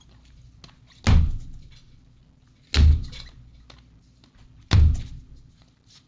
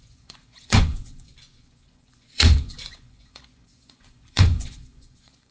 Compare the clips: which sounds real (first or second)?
first